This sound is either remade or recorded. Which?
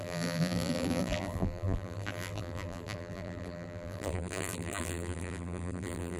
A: remade